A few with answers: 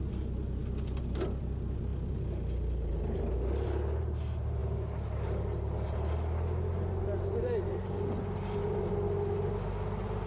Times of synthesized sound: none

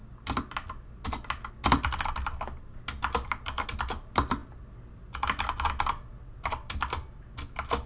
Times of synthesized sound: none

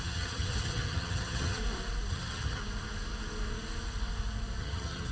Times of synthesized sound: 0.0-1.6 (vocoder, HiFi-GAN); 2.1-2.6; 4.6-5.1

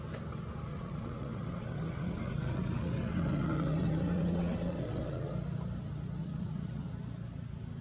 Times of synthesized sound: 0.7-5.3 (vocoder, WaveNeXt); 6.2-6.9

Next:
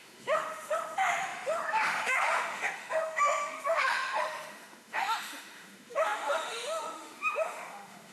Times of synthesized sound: 0.0-8.1 (autoencoder, DAC-VAE)

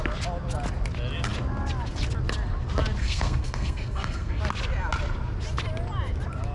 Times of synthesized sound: 3.0-4.4 (codec, SNAC)

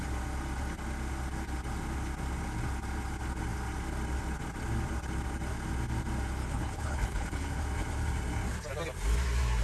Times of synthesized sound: 6.4-7.6 (codec, HILCodec)